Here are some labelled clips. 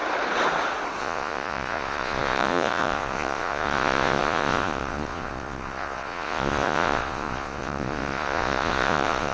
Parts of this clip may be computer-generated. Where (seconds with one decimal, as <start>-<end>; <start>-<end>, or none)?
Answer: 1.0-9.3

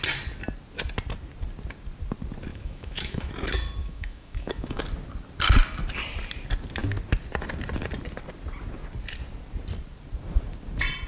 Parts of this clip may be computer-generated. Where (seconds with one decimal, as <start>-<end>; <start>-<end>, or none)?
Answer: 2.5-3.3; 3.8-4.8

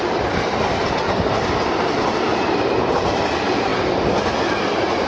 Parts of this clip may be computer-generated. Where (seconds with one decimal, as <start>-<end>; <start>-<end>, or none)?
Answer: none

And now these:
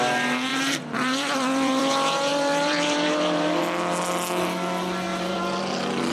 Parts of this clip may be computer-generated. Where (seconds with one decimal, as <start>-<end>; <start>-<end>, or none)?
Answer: 0.5-1.9; 2.3-3.6; 5.1-6.1

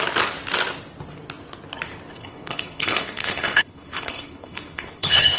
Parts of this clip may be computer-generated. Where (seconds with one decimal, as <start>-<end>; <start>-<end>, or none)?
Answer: 2.1-5.4